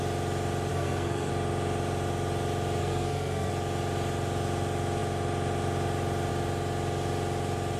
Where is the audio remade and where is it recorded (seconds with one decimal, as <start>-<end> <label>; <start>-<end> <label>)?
0.0-0.7 recorded; 0.7-1.3 remade; 1.3-2.8 recorded; 2.8-3.5 remade; 3.5-7.8 recorded